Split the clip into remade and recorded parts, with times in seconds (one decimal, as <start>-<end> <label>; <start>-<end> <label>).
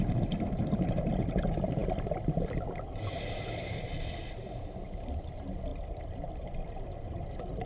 0.0-7.7 recorded